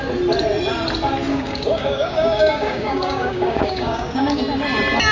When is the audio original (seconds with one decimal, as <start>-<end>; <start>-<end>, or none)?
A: 0.0-1.3; 4.4-5.1